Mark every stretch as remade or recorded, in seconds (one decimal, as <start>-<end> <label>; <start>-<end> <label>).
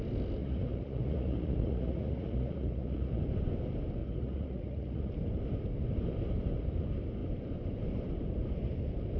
0.0-0.4 recorded; 0.4-3.2 remade; 3.2-4.0 recorded; 4.0-5.1 remade; 5.1-9.2 recorded